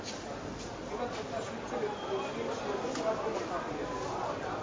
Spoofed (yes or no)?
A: no